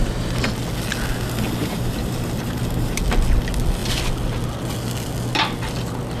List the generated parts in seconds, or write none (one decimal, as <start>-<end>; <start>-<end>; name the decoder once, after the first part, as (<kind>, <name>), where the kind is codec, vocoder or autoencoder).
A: 1.6-3.0 (vocoder, BigVGAN v2)